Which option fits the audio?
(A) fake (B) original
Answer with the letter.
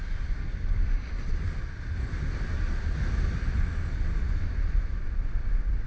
B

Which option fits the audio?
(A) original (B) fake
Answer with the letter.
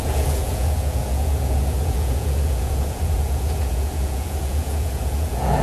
B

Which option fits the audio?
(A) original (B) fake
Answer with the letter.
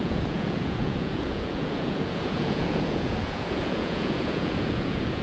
B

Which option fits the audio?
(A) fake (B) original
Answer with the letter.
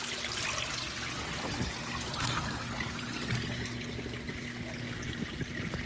B